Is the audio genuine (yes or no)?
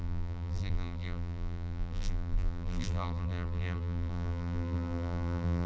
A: no